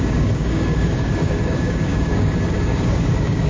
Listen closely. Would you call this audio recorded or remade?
remade